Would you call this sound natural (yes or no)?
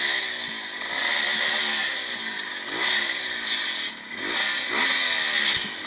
yes